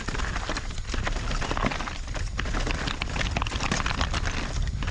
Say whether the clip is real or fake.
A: real